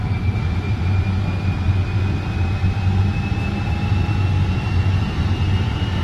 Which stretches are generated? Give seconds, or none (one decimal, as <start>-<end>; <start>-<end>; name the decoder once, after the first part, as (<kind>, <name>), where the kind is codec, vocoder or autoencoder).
none